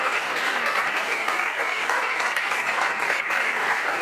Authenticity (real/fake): fake